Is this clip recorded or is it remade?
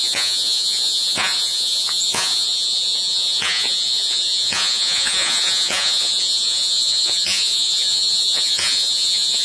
remade